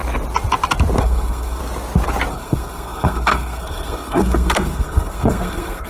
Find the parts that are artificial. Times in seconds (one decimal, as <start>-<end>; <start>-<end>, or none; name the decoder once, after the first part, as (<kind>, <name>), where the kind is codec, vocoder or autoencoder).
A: 1.0-1.6 (codec, SNAC); 2.3-5.9